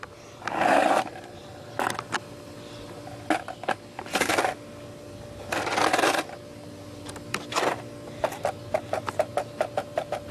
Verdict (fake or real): real